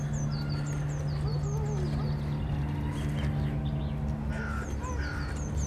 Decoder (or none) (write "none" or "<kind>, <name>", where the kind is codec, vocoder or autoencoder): vocoder, BigVGAN v2